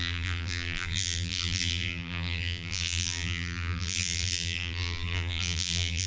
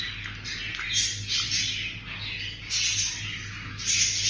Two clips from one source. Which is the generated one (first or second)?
first